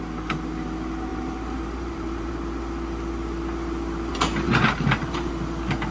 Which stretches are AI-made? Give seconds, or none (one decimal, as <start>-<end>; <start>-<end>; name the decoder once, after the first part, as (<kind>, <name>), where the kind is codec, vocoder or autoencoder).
1.1-2.3 (vocoder, BigVGAN v2); 4.1-5.3